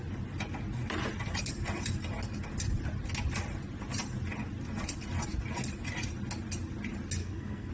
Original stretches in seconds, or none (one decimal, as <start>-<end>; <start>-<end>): 0.0-7.2